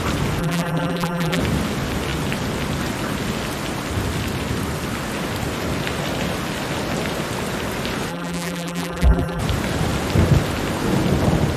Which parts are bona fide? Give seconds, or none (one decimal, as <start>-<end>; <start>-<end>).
0.0-0.4; 1.4-8.1; 9.4-11.6